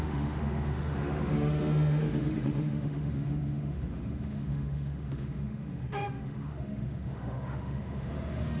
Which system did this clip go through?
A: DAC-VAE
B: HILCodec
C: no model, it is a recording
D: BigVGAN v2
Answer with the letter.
A